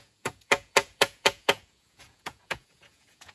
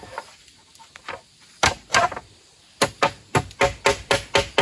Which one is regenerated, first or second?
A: first